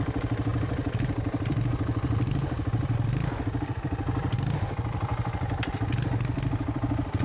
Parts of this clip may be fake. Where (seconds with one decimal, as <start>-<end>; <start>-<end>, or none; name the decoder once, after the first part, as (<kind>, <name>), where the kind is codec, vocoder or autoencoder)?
0.0-5.1 (vocoder, BigVGAN v2); 5.7-7.2